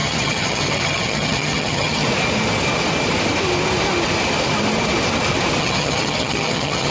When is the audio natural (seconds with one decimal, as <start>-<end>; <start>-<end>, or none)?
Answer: 2.0-5.6